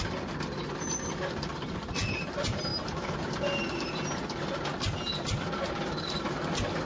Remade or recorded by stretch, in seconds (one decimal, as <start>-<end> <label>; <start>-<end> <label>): 0.0-6.9 recorded